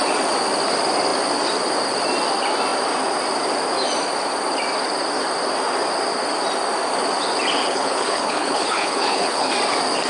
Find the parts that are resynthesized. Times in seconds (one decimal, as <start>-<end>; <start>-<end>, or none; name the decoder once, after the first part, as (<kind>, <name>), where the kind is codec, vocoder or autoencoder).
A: 7.6-9.5 (codec, HILCodec)